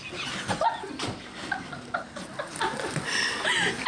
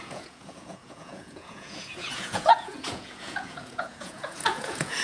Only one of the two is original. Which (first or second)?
first